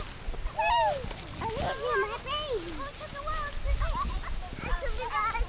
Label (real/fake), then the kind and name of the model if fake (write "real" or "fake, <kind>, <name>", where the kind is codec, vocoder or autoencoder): real